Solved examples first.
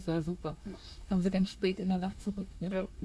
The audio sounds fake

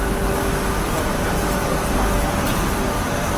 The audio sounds real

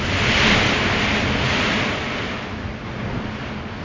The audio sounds real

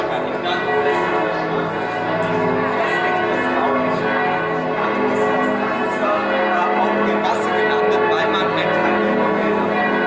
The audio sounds real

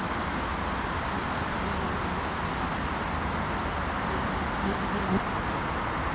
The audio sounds real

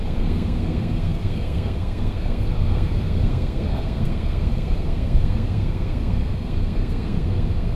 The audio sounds fake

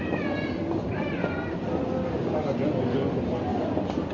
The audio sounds real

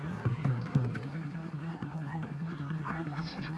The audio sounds fake